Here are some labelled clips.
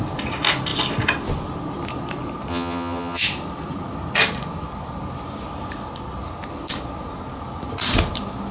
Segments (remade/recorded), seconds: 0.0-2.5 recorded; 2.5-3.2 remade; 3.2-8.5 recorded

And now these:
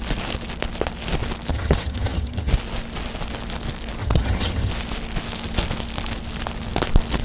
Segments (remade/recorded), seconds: 0.0-1.5 recorded; 1.5-2.5 remade; 2.5-4.0 recorded; 4.0-4.7 remade; 4.7-7.2 recorded

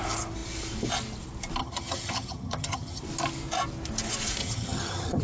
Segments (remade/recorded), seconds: 0.0-1.6 recorded; 1.6-3.0 remade; 3.0-4.4 recorded; 4.4-5.2 remade

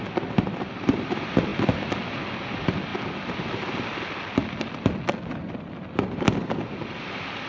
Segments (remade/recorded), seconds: 0.0-7.5 recorded

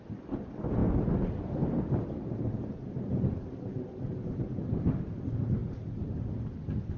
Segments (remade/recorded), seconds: 0.0-7.0 recorded

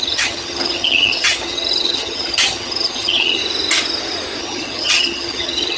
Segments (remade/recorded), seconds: 0.0-3.4 remade; 3.4-4.4 recorded; 4.4-5.8 remade

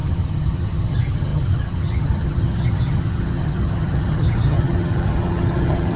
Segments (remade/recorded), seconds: 0.0-6.0 remade

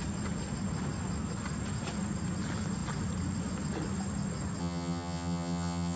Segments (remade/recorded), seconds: 0.0-4.6 recorded; 4.6-6.0 remade